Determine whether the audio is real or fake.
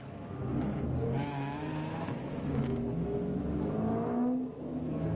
fake